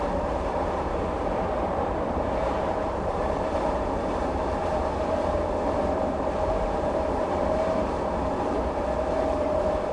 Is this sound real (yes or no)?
no